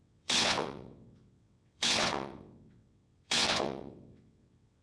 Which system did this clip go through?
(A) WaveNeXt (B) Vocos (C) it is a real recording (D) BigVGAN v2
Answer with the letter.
A